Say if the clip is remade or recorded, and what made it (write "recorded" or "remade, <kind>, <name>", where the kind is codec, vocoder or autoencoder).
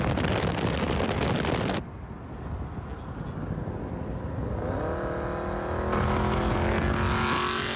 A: recorded